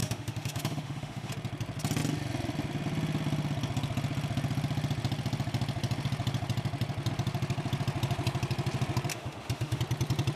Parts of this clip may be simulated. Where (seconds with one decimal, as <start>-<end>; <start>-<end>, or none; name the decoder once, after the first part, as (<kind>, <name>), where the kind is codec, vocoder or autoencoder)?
0.0-1.3 (autoencoder, DAC-VAE); 9.1-9.8